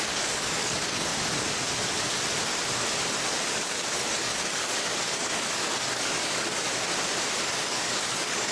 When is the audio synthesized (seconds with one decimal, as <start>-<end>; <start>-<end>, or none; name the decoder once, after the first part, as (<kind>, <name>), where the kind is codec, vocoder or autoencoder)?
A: 0.0-1.1 (codec, DAC); 3.5-6.7; 7.4-8.5